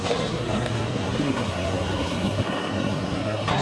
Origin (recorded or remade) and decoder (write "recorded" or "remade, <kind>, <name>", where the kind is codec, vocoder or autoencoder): remade, codec, SNAC